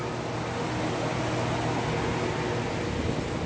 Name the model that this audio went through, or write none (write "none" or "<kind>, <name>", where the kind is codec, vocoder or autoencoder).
none